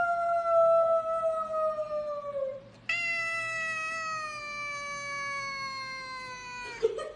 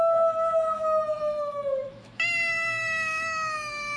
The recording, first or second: first